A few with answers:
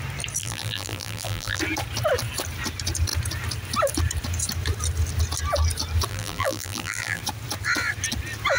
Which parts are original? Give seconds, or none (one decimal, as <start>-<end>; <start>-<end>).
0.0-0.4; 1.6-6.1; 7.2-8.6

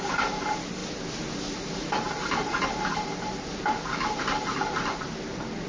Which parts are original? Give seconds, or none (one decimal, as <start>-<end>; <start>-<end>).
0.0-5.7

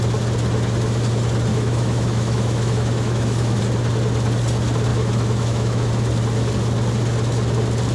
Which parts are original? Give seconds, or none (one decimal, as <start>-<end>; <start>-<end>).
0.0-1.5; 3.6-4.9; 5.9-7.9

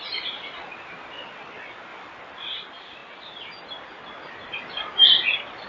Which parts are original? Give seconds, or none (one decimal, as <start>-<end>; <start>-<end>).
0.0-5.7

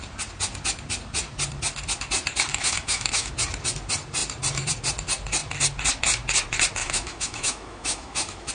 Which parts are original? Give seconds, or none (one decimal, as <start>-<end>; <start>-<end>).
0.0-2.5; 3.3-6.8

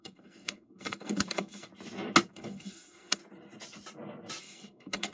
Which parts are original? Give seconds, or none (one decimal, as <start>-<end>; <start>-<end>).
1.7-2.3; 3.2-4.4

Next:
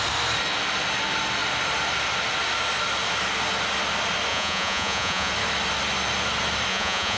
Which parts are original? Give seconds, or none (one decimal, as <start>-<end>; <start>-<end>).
0.0-4.3; 5.3-6.7

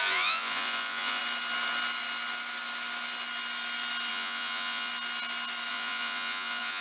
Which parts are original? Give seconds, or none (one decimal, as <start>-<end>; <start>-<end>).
1.2-4.1; 4.9-5.7